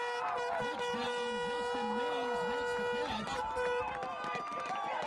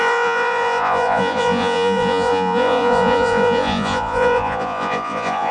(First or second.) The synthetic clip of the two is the second